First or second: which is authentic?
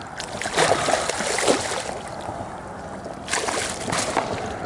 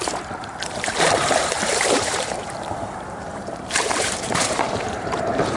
first